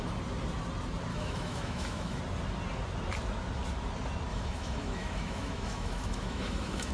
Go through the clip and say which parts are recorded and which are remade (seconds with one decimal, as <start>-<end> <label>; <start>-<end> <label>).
0.0-1.1 recorded; 1.1-2.2 remade; 2.2-4.3 recorded; 4.3-6.9 remade